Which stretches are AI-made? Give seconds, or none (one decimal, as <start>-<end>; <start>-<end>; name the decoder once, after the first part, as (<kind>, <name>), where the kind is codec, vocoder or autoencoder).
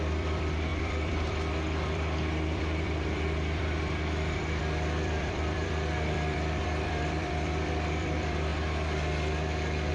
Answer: 0.0-8.5 (vocoder, BigVGAN v2)